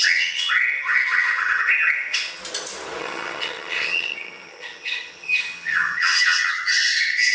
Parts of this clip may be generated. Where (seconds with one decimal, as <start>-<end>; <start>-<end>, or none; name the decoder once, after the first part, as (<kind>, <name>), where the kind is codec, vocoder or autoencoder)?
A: 0.0-2.4 (vocoder, HiFi-GAN); 3.0-7.3